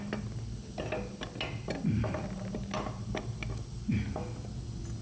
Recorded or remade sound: recorded